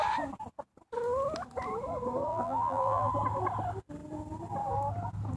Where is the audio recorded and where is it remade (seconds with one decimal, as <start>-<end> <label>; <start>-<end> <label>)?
0.0-2.3 recorded; 2.3-3.1 remade; 3.1-5.4 recorded

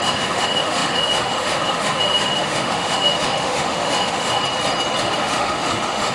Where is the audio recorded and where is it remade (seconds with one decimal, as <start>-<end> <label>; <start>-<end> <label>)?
0.0-4.4 remade; 4.4-5.0 recorded; 5.0-6.1 remade